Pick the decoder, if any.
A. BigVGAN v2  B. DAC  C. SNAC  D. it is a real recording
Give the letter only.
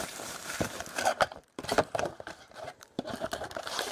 A